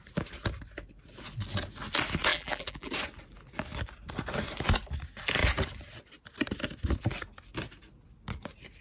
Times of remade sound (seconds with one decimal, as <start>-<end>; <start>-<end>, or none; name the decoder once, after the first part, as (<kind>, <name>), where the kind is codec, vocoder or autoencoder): 2.3-2.9 (vocoder, BigVGAN v2)